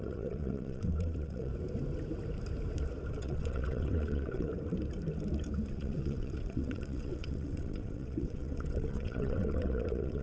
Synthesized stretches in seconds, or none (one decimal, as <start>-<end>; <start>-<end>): 0.0-1.5; 3.2-4.5; 5.7-10.2